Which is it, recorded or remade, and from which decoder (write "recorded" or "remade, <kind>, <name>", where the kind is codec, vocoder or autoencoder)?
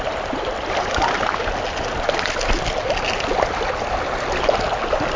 recorded